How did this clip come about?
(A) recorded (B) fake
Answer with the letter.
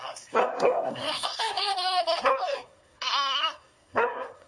B